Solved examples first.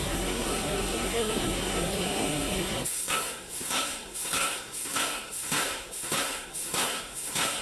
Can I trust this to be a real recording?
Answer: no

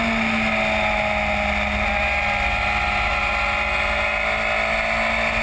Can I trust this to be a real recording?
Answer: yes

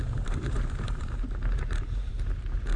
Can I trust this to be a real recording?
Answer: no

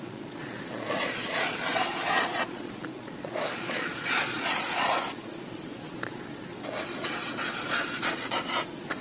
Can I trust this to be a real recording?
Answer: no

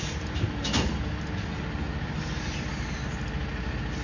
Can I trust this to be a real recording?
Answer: yes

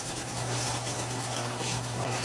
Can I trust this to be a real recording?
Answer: no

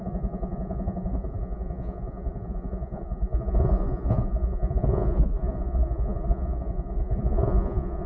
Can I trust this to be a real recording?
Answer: no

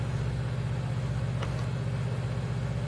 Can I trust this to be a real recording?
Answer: yes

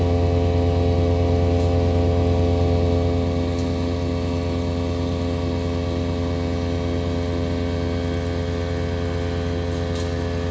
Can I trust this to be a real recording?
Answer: yes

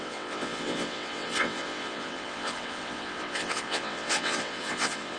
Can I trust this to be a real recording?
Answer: no